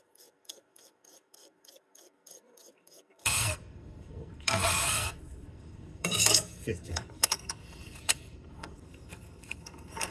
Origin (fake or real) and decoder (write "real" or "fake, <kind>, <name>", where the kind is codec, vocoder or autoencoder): fake, codec, SNAC